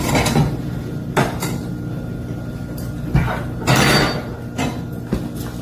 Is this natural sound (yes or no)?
yes